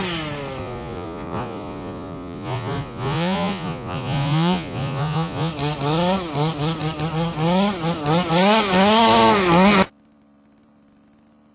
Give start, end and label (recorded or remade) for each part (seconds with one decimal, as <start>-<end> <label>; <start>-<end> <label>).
0.0-0.6 recorded; 0.6-5.5 remade; 5.5-11.5 recorded